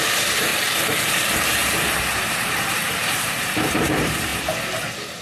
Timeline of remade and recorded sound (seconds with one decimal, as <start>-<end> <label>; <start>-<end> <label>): 0.0-0.5 remade; 0.5-1.1 recorded; 1.1-4.3 remade; 4.3-5.2 recorded